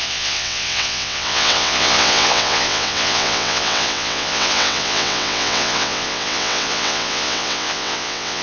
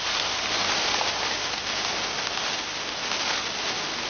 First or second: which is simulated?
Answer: first